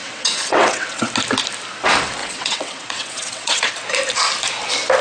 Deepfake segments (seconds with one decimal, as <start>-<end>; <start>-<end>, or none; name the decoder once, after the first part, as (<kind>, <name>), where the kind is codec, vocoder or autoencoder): 0.0-1.1 (vocoder, WaveNeXt); 2.2-3.7